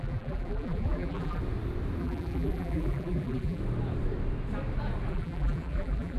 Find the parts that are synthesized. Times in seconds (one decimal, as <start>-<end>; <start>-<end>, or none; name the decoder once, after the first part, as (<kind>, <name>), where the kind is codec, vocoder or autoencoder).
0.0-1.4 (vocoder, BigVGAN v2); 2.0-3.6; 5.1-6.2